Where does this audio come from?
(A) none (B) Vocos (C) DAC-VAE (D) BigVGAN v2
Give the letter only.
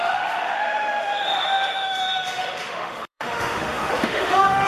C